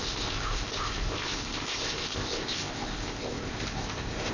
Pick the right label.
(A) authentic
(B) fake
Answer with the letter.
B